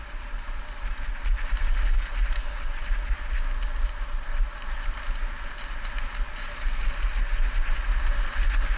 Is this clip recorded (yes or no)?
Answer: yes